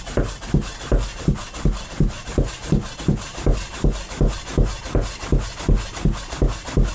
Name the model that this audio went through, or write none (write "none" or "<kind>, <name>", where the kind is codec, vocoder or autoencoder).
none